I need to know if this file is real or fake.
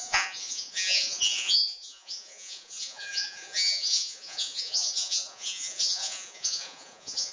fake